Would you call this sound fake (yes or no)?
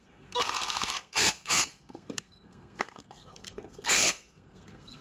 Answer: yes